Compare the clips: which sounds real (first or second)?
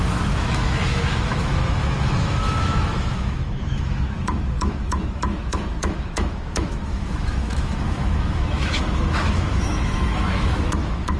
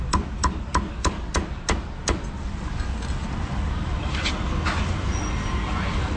second